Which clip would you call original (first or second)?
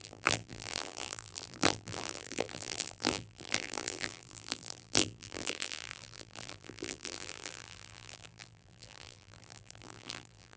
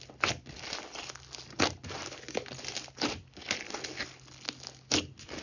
second